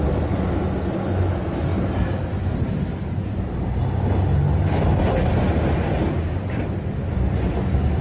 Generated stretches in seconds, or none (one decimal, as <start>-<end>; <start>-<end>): 1.7-3.8